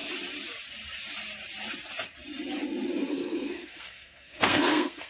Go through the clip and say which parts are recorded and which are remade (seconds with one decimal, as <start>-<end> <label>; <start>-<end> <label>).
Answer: 0.0-3.1 recorded; 3.1-5.1 remade